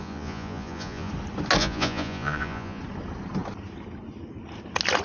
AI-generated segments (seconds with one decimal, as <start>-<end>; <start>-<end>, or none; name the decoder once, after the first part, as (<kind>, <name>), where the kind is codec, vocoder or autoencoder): 0.0-1.1 (vocoder, Vocos); 1.6-2.8